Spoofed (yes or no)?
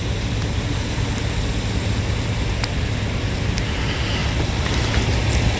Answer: no